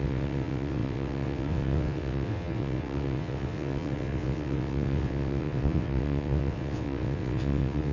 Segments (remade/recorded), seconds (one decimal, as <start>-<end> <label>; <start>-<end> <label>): 0.0-7.9 remade